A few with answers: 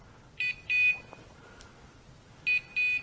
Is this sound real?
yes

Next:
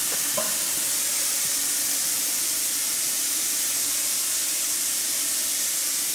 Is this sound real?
yes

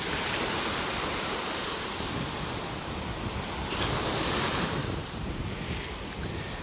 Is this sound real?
yes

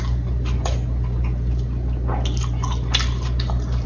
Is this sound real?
yes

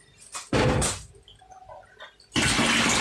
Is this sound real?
yes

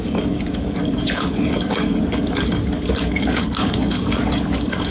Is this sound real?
no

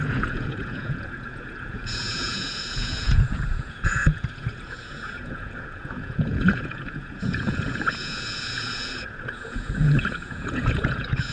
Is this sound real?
no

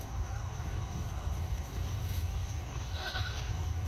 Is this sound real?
no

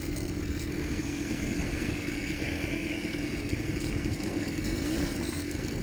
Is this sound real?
no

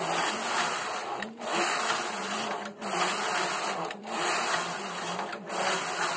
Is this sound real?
yes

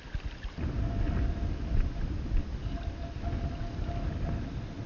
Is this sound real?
yes